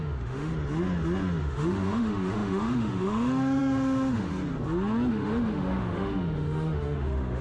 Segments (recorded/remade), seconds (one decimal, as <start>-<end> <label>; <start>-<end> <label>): 0.0-0.5 remade; 0.5-1.4 recorded; 1.4-4.3 remade; 4.3-5.1 recorded; 5.1-7.4 remade